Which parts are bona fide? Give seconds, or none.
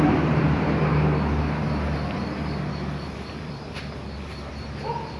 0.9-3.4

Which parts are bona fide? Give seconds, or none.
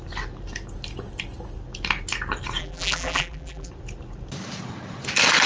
0.0-2.6; 3.7-5.5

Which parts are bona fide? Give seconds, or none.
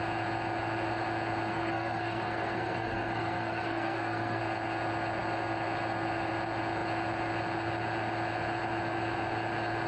0.0-1.5; 4.4-9.9